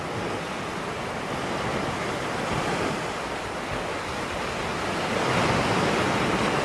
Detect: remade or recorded recorded